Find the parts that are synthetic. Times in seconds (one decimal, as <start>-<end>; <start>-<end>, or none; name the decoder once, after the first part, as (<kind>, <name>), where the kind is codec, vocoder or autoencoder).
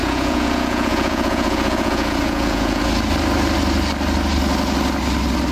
0.0-2.8 (vocoder, Vocos)